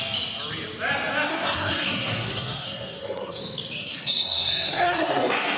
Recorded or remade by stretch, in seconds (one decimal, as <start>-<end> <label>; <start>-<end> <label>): 0.0-1.3 recorded; 1.3-3.4 remade; 3.4-3.8 recorded; 3.8-5.6 remade